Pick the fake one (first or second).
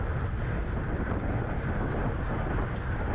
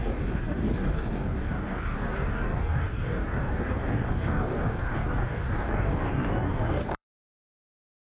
second